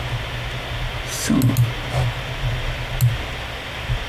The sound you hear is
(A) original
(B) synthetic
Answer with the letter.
A